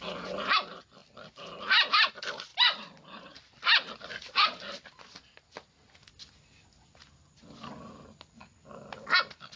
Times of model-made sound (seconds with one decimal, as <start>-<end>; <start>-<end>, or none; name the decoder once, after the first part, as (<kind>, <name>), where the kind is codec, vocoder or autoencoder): 1.0-2.1 (vocoder, BigVGAN v2); 2.5-5.0